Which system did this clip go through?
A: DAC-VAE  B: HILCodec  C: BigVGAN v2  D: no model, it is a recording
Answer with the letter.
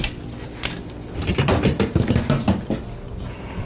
D